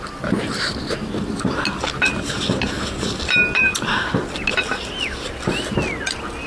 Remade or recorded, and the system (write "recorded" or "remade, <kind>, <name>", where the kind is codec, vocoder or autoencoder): recorded